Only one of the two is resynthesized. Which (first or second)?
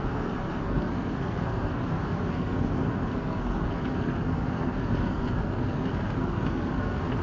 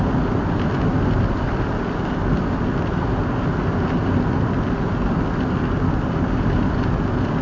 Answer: first